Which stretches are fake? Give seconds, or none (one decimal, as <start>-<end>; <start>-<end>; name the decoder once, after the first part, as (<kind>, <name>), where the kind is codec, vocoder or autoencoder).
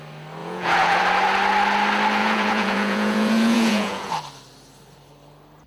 0.4-1.0 (vocoder, Vocos); 2.2-4.1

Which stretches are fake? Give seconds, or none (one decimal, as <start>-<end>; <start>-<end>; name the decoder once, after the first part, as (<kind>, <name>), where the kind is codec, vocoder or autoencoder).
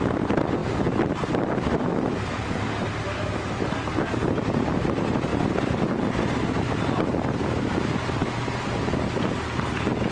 none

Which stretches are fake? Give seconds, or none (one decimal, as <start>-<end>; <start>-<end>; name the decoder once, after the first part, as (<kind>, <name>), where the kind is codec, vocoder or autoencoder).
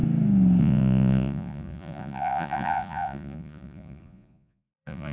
0.6-5.1 (vocoder, Vocos)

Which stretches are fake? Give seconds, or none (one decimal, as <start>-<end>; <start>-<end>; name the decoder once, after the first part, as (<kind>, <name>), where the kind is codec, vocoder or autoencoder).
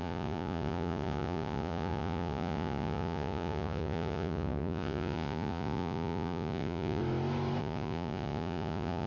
0.0-7.0 (vocoder, Vocos); 7.6-9.1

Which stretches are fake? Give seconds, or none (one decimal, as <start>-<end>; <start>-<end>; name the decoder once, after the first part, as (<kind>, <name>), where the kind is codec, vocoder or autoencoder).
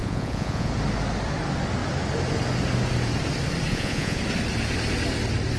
0.0-0.7 (vocoder, Vocos); 3.7-4.2